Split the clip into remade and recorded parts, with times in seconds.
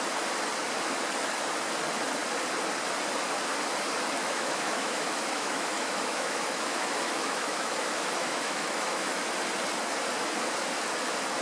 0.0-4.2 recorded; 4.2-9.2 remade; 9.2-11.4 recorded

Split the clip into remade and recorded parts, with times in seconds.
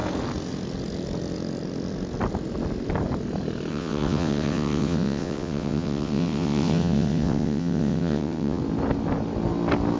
0.0-3.7 recorded; 3.7-8.6 remade; 8.6-10.0 recorded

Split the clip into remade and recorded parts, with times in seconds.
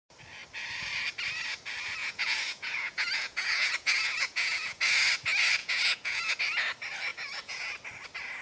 0.0-2.0 recorded; 2.0-4.8 remade; 4.8-5.6 recorded; 5.6-6.4 remade; 6.4-7.1 recorded; 7.1-7.7 remade; 7.7-8.4 recorded